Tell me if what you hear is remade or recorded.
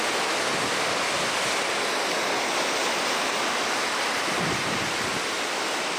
recorded